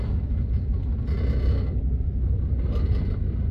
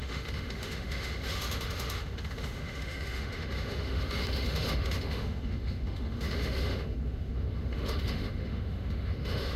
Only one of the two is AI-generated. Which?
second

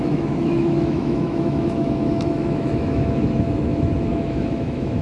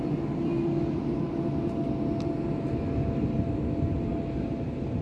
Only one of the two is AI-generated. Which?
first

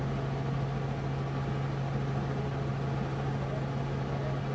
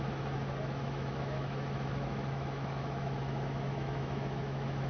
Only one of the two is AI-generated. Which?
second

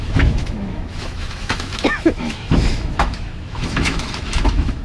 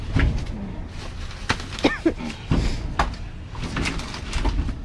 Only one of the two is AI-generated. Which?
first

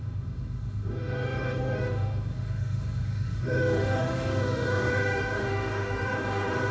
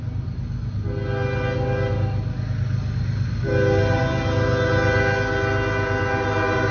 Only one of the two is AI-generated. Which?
first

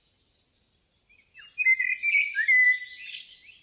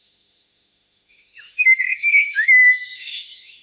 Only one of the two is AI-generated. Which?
second